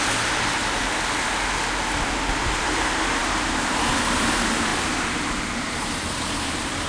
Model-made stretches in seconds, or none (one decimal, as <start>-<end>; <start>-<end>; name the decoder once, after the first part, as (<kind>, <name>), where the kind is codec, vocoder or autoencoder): 0.0-0.6 (vocoder, BigVGAN v2); 2.4-6.9